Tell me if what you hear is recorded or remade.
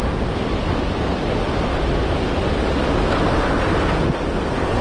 recorded